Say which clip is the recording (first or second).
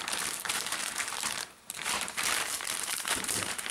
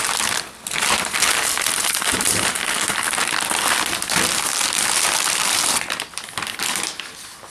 second